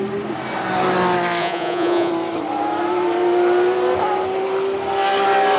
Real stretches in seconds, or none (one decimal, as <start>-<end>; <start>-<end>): 0.0-1.4; 2.1-5.6